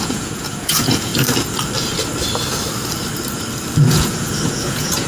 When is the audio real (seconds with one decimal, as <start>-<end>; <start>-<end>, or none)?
1.1-3.9